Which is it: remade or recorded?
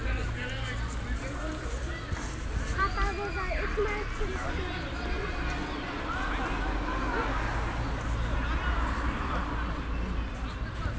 recorded